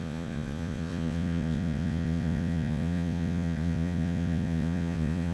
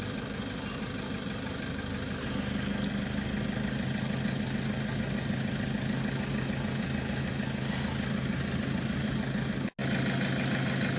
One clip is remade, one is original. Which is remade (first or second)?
first